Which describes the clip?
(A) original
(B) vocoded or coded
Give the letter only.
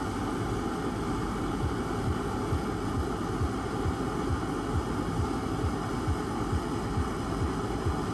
A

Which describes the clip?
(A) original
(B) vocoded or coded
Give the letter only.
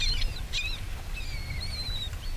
B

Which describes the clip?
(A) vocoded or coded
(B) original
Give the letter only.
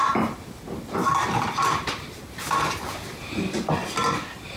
B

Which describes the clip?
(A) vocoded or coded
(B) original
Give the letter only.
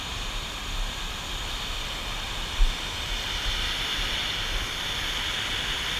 B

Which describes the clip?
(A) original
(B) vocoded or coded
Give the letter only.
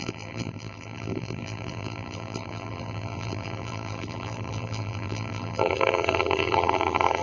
B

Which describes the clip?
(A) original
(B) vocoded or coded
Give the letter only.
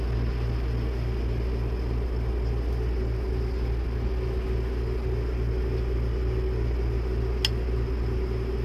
A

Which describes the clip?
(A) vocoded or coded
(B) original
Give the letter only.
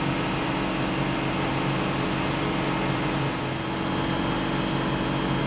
B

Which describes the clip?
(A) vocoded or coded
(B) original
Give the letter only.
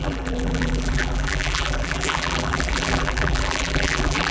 A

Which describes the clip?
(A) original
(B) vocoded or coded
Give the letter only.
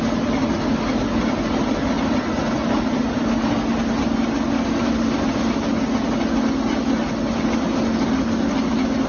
A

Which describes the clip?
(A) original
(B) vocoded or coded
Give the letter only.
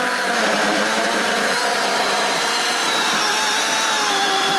B